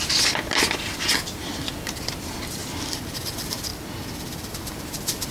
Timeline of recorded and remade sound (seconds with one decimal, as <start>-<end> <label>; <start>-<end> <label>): 0.0-3.7 recorded; 3.7-4.5 remade; 4.5-5.3 recorded